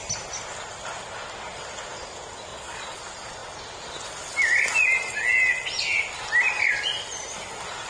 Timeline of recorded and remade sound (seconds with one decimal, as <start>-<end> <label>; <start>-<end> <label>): 0.0-2.5 recorded; 2.5-3.0 remade; 3.0-7.9 recorded